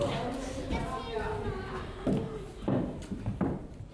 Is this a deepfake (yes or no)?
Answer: no